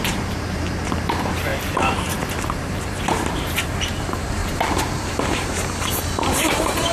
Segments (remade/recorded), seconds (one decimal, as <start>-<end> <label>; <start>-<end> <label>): 0.0-6.9 remade